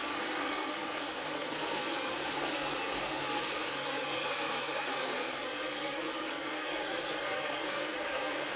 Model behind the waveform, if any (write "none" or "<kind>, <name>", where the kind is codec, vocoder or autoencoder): codec, SNAC